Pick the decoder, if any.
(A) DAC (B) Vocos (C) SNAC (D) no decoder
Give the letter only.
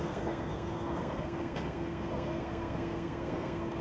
C